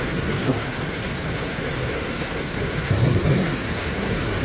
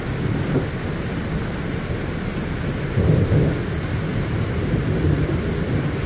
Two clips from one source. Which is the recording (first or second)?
second